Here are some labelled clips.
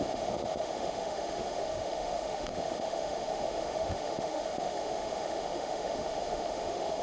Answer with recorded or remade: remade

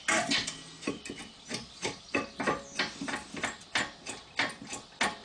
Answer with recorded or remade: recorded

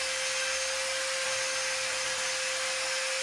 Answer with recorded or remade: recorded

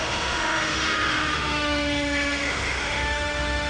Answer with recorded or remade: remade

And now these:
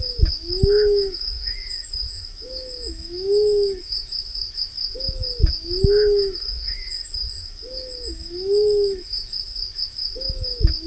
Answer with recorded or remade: remade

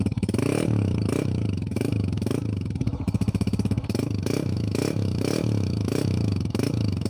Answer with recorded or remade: remade